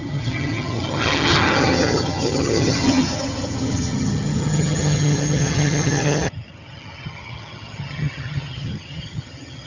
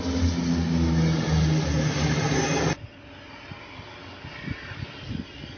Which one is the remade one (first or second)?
first